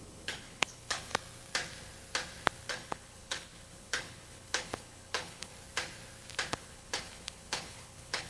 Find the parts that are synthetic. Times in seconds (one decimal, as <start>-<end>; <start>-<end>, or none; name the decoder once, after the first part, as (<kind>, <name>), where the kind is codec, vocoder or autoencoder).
0.0-1.1 (codec, HILCodec); 2.7-5.5; 6.5-8.3